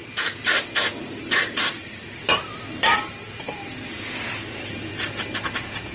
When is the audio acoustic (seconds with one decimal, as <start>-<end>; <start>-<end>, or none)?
0.0-5.9